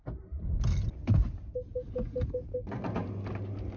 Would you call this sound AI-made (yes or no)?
no